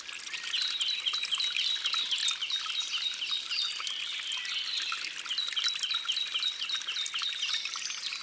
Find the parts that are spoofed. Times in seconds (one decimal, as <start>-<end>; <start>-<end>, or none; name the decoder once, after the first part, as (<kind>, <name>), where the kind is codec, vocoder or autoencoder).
none

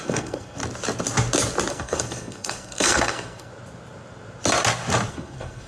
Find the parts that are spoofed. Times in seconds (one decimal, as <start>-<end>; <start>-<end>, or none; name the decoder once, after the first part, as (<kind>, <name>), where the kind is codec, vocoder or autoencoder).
0.0-0.6 (codec, SNAC); 1.7-3.5; 5.1-5.7

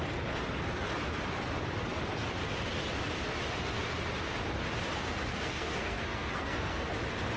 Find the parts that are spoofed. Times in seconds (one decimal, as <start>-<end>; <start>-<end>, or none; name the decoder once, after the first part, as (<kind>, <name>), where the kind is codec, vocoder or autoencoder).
5.3-6.9 (codec, SNAC)

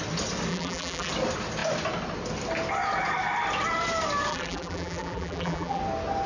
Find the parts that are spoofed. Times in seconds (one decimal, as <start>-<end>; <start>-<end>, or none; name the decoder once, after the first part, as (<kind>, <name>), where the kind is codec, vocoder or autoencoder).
0.5-1.1 (vocoder, BigVGAN v2); 4.3-5.8

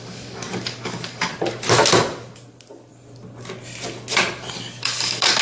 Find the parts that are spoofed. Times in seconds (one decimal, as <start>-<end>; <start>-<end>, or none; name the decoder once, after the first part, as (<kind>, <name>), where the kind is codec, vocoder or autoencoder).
0.0-1.3 (codec, DAC); 4.5-5.4